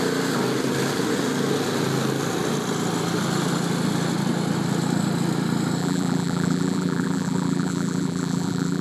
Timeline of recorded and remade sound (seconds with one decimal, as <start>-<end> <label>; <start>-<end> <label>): 0.0-5.8 recorded; 5.8-8.8 remade